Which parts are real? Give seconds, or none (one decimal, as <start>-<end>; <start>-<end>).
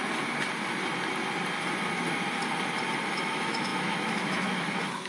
0.0-3.1